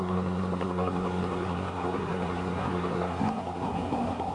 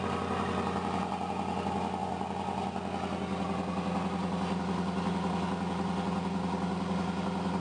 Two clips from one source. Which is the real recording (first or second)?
second